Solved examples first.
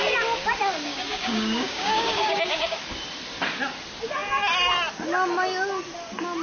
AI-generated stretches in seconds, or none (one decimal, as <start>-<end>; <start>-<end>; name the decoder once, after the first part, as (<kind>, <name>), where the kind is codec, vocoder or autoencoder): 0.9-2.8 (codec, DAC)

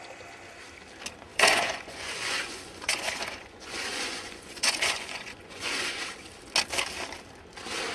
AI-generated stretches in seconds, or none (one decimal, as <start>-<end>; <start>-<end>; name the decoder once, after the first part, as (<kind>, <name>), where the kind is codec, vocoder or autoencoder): 1.3-6.0 (vocoder, Vocos)

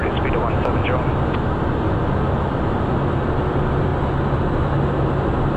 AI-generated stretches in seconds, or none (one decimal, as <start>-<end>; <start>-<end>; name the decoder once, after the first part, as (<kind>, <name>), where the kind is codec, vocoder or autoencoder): none

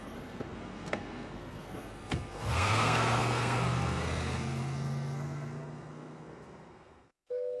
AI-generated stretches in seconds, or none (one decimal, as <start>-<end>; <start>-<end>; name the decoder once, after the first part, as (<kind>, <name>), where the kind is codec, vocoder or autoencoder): 0.0-7.6 (codec, SNAC)

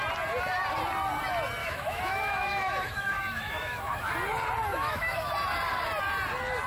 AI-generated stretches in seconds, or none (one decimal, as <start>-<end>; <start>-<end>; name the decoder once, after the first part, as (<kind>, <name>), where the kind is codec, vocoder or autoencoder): 1.6-4.1 (autoencoder, DAC-VAE); 4.7-5.3

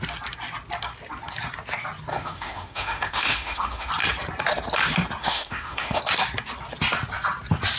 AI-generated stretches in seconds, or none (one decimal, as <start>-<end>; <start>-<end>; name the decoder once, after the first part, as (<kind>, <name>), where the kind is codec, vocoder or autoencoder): 2.1-3.9 (autoencoder, DAC-VAE); 5.2-6.0

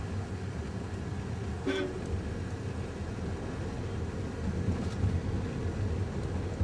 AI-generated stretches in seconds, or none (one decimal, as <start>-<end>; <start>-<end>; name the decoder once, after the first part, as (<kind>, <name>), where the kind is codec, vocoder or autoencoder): none